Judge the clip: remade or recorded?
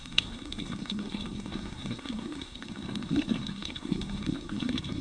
remade